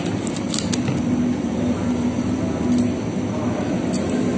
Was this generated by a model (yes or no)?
no